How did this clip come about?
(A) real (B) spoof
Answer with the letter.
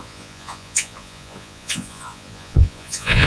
B